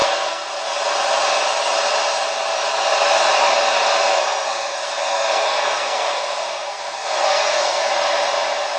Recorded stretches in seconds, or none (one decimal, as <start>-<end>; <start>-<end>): 0.5-4.1; 7.9-8.8